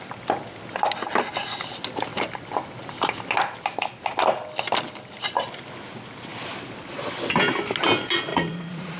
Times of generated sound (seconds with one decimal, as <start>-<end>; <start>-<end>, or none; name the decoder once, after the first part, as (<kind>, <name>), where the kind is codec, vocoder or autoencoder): 8.3-9.0 (vocoder, Vocos)